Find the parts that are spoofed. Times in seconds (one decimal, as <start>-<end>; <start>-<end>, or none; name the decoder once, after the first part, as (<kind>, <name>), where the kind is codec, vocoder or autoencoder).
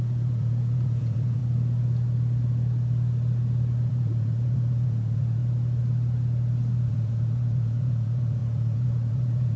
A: 0.0-1.4 (vocoder, Vocos); 3.9-5.4; 6.9-9.6